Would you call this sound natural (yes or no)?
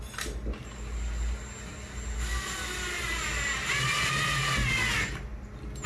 yes